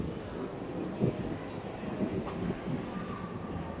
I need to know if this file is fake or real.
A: real